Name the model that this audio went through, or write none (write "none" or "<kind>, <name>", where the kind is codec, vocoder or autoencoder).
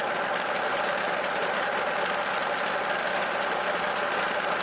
vocoder, BigVGAN v2